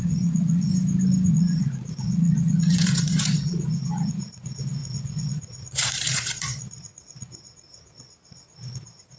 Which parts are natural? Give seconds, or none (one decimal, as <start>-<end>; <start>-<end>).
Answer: 0.7-1.3

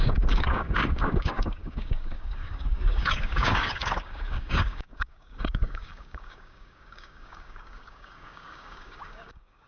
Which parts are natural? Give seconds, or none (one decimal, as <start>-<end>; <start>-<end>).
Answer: none

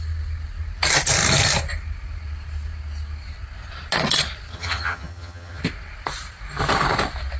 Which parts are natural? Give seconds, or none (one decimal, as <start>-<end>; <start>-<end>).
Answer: 0.0-4.5; 5.6-7.4

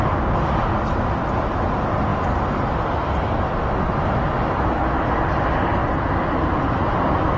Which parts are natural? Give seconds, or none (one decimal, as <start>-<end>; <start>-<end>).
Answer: 0.0-7.4

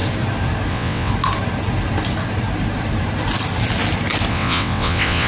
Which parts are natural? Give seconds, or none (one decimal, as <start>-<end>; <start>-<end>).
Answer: 0.0-0.7; 1.1-4.3

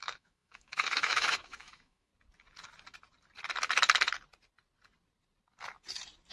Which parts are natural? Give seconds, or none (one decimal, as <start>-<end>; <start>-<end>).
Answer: 2.1-6.3